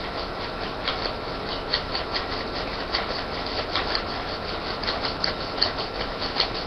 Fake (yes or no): no